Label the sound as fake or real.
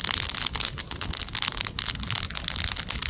real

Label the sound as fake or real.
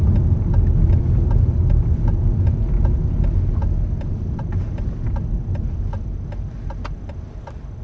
real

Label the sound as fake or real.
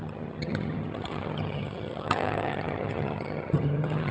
fake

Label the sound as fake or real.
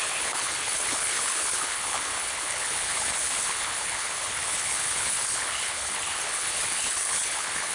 fake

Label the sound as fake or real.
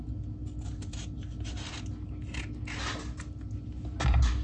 real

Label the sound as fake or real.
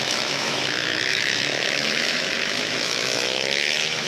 fake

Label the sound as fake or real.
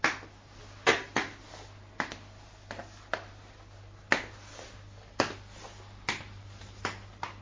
real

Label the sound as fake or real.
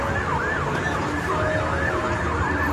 real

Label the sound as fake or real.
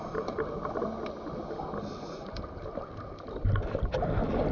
real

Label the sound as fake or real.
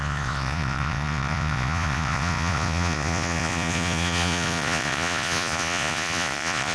fake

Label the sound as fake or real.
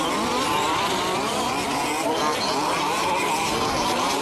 real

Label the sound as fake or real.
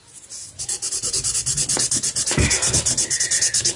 real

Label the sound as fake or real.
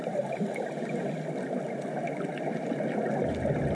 real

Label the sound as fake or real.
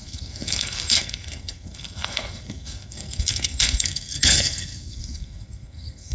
fake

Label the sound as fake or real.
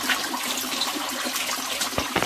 real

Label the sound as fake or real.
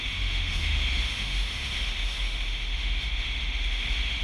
fake